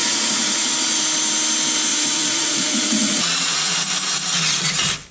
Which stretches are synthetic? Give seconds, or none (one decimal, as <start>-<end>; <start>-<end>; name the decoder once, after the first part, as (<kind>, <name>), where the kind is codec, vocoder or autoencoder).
0.0-0.7 (vocoder, Vocos); 1.9-3.9